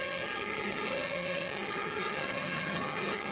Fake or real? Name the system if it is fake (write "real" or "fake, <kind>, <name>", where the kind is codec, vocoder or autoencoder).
fake, vocoder, HiFi-GAN